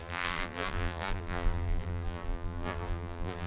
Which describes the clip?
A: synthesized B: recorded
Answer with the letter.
A